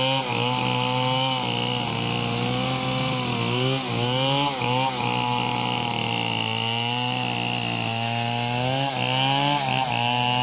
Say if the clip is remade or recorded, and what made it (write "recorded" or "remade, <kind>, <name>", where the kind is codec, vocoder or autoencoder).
recorded